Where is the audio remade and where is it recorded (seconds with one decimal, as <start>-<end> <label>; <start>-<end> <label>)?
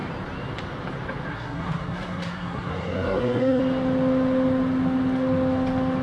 0.0-1.3 recorded; 1.3-3.6 remade; 3.6-6.0 recorded